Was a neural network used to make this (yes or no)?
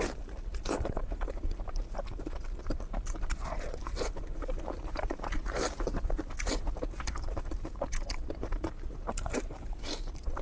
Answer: yes